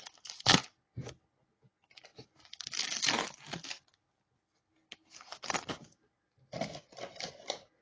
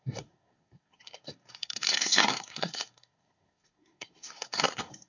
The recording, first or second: first